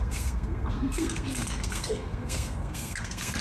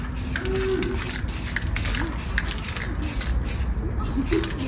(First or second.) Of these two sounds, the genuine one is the second